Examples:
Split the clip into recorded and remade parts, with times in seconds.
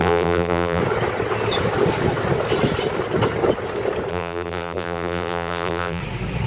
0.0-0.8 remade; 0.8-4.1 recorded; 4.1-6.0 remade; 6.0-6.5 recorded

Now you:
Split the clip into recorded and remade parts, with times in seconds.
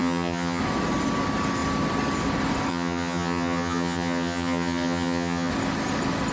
0.0-0.6 remade; 0.6-2.7 recorded; 2.7-5.5 remade; 5.5-6.3 recorded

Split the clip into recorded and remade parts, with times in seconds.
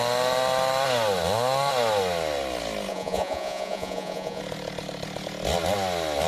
0.0-2.9 recorded; 2.9-4.4 remade; 4.4-6.3 recorded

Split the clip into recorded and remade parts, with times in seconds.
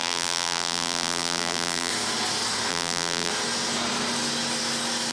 0.0-1.9 remade; 1.9-2.7 recorded; 2.7-3.3 remade; 3.3-5.1 recorded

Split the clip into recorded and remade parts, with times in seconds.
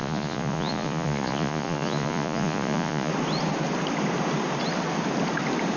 0.0-3.1 remade; 3.1-5.8 recorded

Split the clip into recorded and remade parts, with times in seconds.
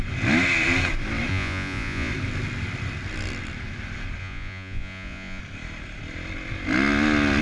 0.0-1.3 recorded; 1.3-2.1 remade; 2.1-4.2 recorded; 4.2-5.4 remade; 5.4-7.4 recorded